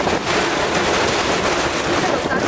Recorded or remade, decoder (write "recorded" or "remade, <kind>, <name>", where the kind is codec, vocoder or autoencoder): recorded